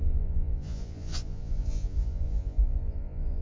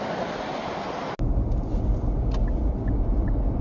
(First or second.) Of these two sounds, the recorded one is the second